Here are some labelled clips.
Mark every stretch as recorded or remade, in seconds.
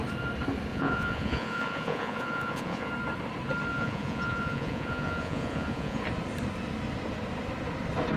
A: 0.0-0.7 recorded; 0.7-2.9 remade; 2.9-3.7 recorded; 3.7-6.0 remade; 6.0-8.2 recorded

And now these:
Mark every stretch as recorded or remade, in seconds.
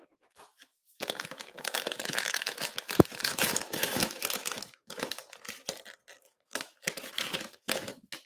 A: 0.0-5.2 remade; 5.2-6.2 recorded; 6.2-8.3 remade